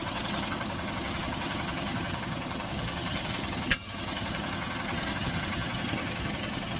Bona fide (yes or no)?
no